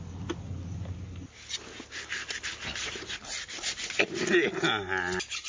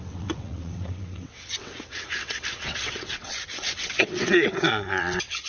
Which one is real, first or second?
first